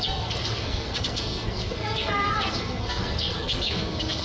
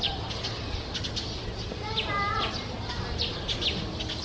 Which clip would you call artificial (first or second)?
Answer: first